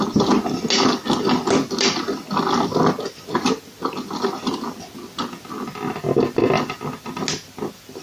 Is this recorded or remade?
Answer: recorded